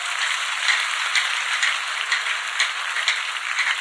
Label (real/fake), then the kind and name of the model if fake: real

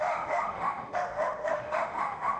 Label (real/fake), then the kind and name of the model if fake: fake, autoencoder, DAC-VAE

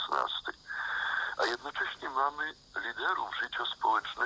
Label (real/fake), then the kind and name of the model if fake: real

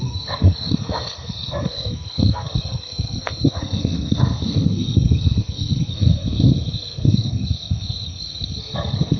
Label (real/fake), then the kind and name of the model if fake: fake, codec, SNAC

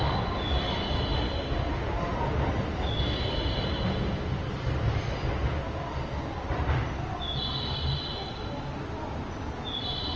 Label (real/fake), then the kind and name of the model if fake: real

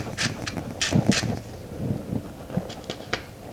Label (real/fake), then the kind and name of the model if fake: real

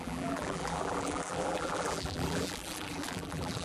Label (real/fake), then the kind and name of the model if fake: fake, vocoder, BigVGAN v2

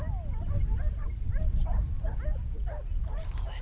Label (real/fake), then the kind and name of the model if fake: real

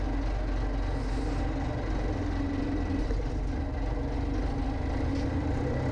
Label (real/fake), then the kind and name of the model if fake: real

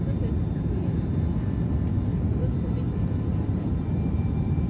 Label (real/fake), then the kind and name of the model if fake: fake, vocoder, BigVGAN v2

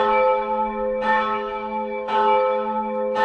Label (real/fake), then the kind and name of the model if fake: fake, autoencoder, DAC-VAE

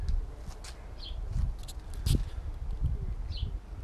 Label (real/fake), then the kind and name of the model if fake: real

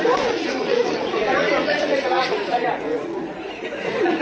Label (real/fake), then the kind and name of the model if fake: fake, vocoder, Vocos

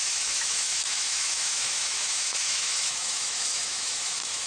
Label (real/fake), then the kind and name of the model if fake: fake, autoencoder, DAC-VAE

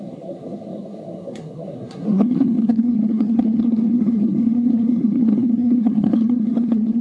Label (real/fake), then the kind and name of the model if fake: fake, codec, SNAC